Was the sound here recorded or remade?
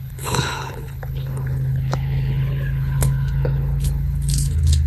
remade